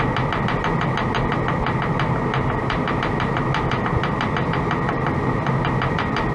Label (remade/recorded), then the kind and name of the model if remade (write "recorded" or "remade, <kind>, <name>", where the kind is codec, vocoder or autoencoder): recorded